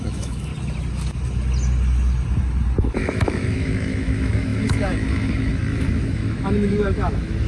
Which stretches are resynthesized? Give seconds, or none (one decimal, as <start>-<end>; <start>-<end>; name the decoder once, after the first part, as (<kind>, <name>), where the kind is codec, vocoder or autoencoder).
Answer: 0.0-0.5 (autoencoder, DAC-VAE); 2.8-7.5